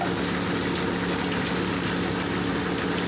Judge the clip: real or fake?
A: real